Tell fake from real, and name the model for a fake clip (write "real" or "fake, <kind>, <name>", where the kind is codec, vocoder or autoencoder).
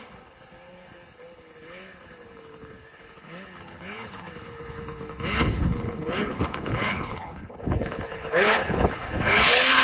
fake, codec, HILCodec